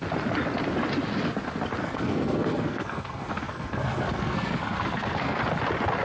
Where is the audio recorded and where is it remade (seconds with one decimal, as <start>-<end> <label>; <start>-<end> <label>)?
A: 0.0-1.8 recorded; 1.8-5.4 remade; 5.4-6.0 recorded